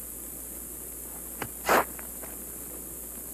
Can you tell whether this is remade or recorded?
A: recorded